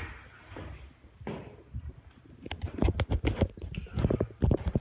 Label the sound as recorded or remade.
recorded